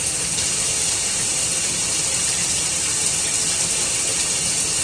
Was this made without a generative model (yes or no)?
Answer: yes